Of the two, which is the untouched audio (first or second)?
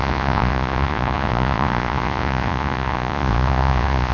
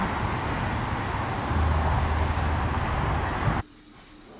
second